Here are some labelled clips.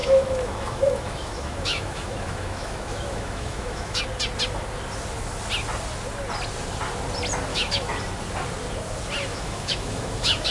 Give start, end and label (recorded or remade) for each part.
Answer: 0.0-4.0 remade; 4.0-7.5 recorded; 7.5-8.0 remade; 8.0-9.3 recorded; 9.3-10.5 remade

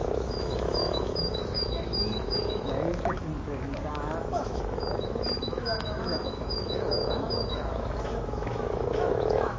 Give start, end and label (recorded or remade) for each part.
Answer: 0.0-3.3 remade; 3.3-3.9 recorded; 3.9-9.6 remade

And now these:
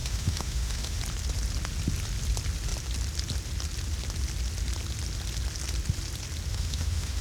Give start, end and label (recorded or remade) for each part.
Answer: 0.0-1.0 remade; 1.0-6.5 recorded; 6.5-7.2 remade